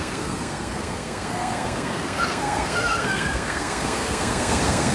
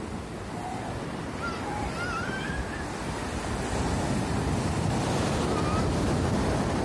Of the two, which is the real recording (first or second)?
second